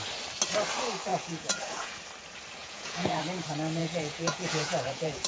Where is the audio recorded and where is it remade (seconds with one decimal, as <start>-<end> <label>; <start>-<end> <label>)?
0.0-1.1 recorded; 1.1-1.9 remade; 1.9-2.6 recorded; 2.6-3.2 remade; 3.2-3.8 recorded; 3.8-5.3 remade